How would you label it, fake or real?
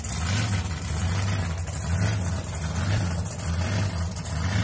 real